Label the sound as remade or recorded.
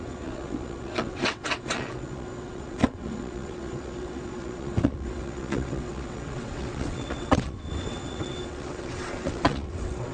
remade